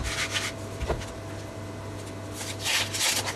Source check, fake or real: real